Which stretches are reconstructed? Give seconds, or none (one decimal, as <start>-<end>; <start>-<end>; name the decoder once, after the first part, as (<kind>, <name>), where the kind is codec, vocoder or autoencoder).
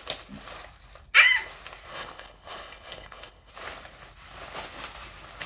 1.9-3.5 (codec, HILCodec)